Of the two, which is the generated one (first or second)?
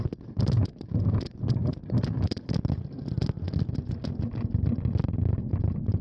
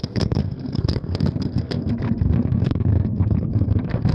second